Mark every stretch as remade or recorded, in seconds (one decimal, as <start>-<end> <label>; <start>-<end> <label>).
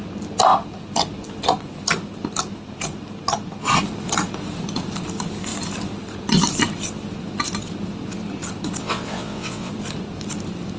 0.0-8.8 recorded; 8.8-9.7 remade; 9.7-10.8 recorded